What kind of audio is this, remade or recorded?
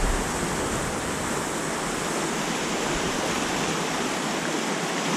recorded